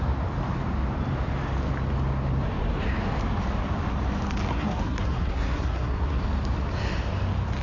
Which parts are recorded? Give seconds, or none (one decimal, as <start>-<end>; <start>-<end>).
0.0-4.5; 6.2-7.6